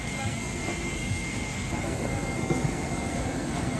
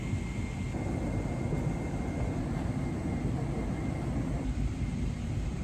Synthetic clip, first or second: first